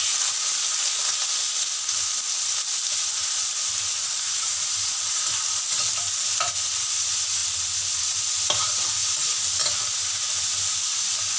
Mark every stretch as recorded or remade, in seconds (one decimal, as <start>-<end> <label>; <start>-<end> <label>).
0.0-11.4 recorded